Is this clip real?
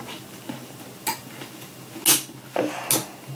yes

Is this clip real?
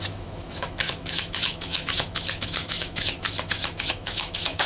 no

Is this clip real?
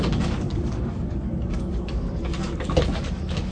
no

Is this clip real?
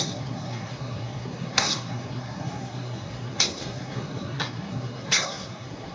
no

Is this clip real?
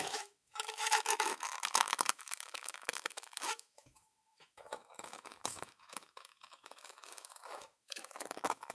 no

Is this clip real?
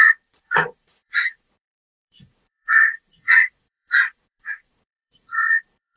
no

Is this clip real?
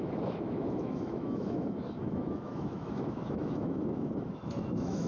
no